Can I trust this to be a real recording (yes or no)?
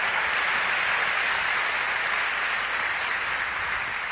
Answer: yes